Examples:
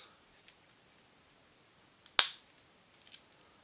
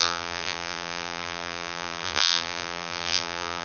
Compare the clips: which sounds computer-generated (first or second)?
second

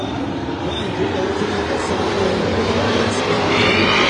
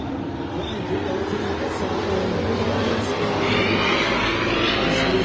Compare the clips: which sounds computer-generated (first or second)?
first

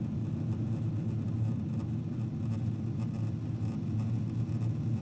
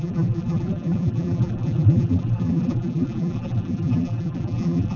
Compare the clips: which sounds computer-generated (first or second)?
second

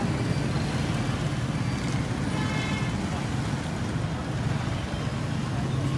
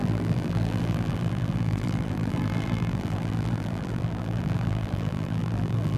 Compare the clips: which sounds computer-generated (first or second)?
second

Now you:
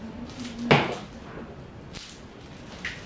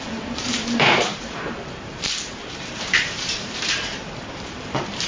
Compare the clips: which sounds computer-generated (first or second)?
second